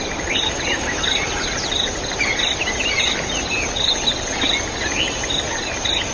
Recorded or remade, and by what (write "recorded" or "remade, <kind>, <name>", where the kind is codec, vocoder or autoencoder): recorded